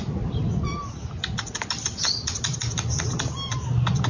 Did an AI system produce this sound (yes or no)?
no